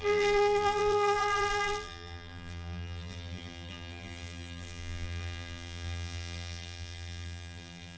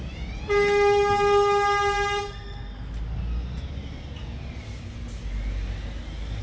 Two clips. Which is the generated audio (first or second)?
first